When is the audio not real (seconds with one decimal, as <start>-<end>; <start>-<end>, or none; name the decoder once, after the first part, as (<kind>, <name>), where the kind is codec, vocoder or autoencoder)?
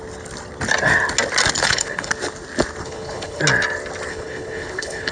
1.6-2.1 (codec, HILCodec); 2.8-3.4; 4.1-5.1